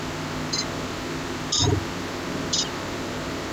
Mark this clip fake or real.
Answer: real